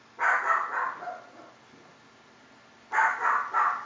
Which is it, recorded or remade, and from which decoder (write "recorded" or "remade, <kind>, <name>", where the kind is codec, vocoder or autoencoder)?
recorded